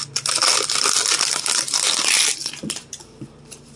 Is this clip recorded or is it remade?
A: recorded